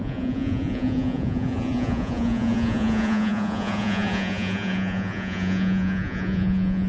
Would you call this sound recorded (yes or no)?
no